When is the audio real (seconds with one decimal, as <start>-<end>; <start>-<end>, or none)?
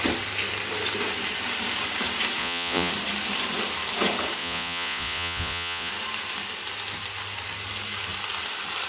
0.0-2.4; 2.9-4.4; 5.9-8.9